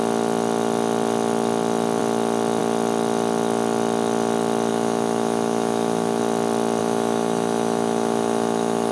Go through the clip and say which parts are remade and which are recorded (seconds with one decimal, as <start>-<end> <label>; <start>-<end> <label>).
0.0-4.7 recorded; 4.7-6.2 remade; 6.2-6.8 recorded; 6.8-8.9 remade